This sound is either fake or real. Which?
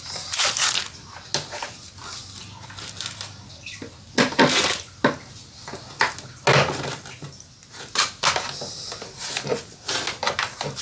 real